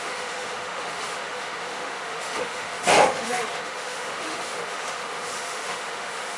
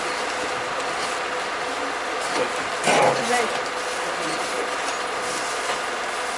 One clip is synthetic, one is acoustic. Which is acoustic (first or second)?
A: second